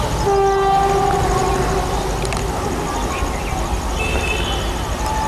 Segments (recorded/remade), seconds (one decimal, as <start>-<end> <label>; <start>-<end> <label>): 0.0-5.3 recorded